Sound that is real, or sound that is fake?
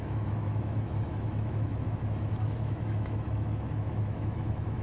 fake